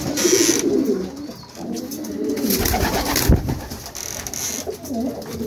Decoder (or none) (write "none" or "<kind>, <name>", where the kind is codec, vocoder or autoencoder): none